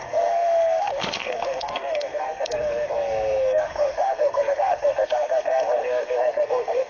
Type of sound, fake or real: fake